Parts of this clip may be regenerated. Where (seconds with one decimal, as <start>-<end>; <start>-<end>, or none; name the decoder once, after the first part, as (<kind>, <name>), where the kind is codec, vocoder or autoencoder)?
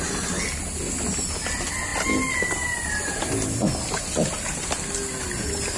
none